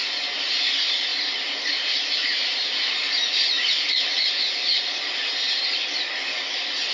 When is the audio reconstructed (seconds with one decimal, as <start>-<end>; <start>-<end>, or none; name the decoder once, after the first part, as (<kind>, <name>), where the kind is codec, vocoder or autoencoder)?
1.1-4.4 (vocoder, BigVGAN v2)